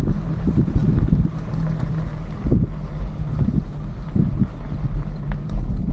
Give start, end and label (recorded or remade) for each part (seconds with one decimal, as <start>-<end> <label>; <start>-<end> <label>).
0.0-5.9 recorded